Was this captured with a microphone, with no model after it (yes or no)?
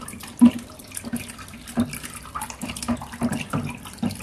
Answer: no